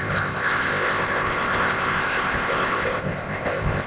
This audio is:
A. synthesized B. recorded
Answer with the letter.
A